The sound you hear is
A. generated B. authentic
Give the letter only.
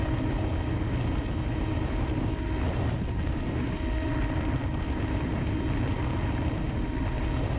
B